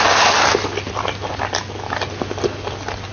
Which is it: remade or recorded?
recorded